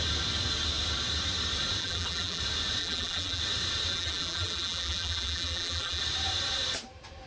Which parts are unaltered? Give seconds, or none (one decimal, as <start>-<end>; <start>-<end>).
0.0-1.8; 2.4-2.8; 3.4-3.9; 6.0-7.3